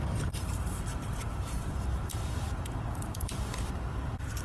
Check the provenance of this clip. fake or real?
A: fake